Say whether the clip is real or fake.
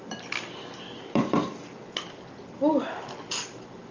fake